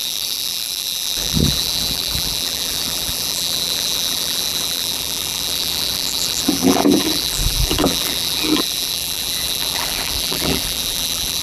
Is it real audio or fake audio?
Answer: fake